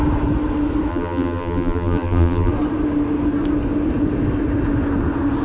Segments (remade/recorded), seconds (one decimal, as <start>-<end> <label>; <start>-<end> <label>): 0.0-0.9 recorded; 0.9-2.5 remade; 2.5-5.4 recorded